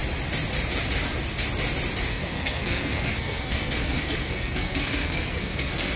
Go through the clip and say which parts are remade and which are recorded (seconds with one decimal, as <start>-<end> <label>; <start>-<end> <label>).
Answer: 0.0-2.1 recorded; 2.1-6.0 remade